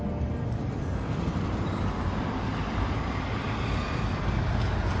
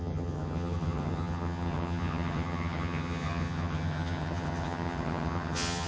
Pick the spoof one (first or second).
second